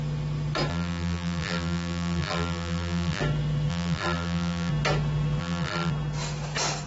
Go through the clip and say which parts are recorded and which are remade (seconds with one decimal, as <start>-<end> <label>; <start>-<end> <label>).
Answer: 0.0-0.7 recorded; 0.7-3.2 remade; 3.2-3.7 recorded; 3.7-4.7 remade; 4.7-5.4 recorded; 5.4-5.9 remade; 5.9-6.9 recorded